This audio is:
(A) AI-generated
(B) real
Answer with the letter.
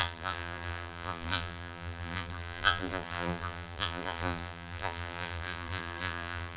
A